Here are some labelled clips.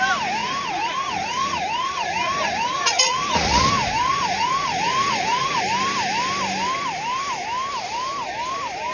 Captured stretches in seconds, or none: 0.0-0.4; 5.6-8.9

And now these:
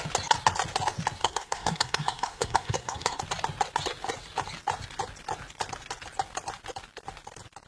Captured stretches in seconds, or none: 0.0-1.2; 3.2-7.7